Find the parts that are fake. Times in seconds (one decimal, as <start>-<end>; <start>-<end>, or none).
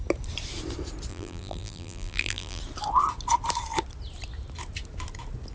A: 1.1-2.6